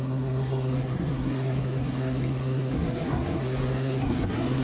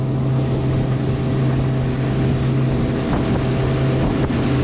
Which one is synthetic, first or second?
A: first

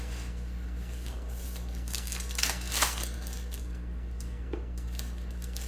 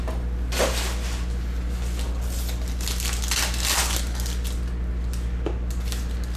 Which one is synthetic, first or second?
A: first